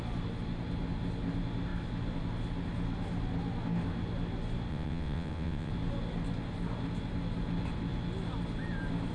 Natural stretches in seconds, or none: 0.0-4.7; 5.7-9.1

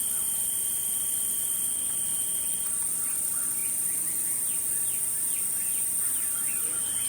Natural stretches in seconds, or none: 0.0-2.1; 3.0-3.6; 6.2-7.1

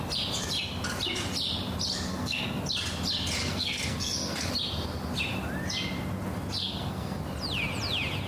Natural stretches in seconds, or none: 0.0-2.1; 2.6-3.4; 4.5-6.6; 7.2-8.3